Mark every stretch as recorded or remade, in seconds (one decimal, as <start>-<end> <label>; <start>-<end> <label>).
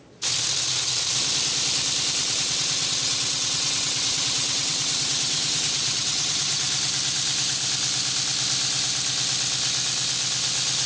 0.0-2.2 recorded; 2.2-6.6 remade; 6.6-10.9 recorded